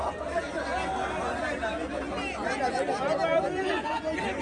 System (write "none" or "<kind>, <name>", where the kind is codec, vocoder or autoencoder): none